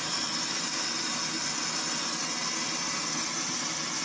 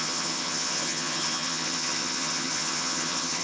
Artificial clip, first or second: second